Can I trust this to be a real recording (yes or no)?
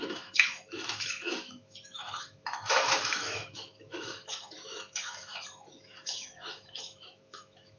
no